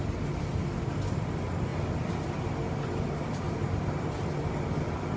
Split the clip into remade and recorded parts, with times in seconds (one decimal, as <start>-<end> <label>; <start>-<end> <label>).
0.0-5.2 recorded